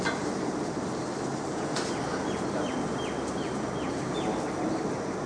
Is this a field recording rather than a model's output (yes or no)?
yes